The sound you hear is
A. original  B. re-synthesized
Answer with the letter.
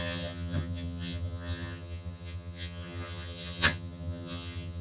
B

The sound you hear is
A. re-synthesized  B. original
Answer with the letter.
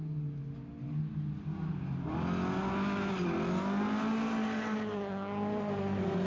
B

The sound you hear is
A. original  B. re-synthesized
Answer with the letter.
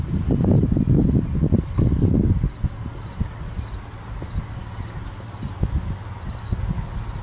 A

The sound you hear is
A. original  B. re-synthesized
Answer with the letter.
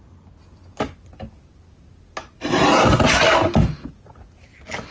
A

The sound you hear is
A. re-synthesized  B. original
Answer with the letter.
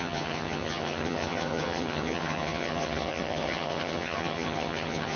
A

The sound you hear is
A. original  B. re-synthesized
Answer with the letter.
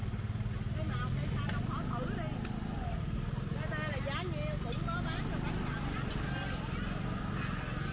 A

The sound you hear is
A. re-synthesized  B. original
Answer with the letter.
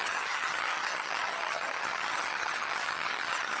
A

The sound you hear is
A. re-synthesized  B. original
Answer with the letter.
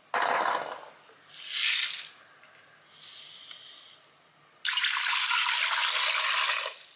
B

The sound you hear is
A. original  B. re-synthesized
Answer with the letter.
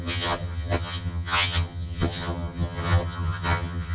B